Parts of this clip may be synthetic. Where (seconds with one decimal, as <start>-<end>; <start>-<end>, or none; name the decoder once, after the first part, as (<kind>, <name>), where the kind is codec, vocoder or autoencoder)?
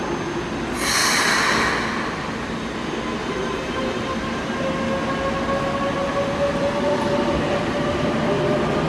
3.2-4.7 (vocoder, BigVGAN v2); 6.0-8.2